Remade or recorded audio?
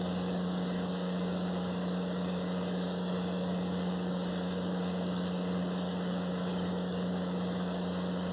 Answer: remade